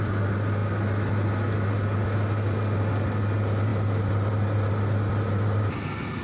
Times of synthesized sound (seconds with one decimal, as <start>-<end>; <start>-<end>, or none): none